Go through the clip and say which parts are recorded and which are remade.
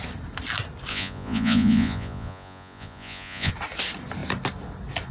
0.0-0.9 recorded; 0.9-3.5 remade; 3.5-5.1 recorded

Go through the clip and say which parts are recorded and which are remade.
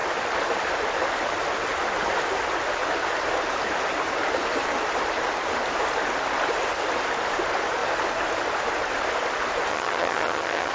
0.0-9.7 recorded; 9.7-10.7 remade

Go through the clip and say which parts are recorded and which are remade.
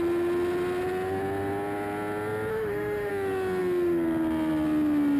0.0-2.5 recorded; 2.5-3.1 remade; 3.1-5.2 recorded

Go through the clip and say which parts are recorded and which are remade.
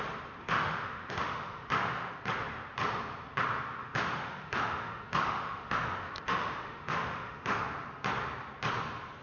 0.0-0.4 recorded; 0.4-2.1 remade; 2.1-3.8 recorded; 3.8-7.6 remade; 7.6-9.2 recorded